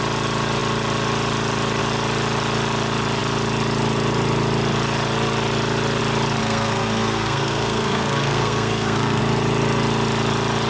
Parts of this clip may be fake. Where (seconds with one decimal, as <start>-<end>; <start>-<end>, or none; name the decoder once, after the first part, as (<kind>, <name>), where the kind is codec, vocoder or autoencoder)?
6.4-9.2 (codec, SNAC)